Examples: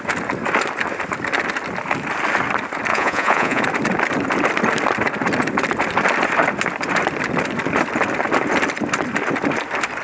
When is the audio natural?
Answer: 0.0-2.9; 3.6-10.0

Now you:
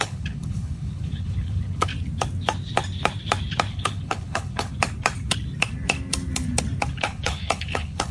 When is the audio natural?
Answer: 1.9-3.7; 4.7-6.9

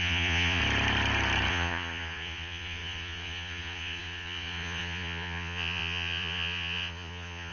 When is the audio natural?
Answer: 0.6-1.5

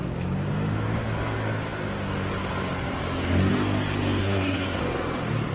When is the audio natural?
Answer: 0.0-4.2; 4.8-5.5